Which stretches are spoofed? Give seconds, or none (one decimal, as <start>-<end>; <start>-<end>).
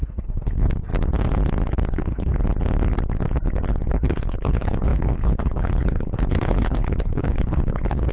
0.0-0.9; 1.9-2.3; 3.9-8.1